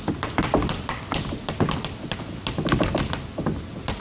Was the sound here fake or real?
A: real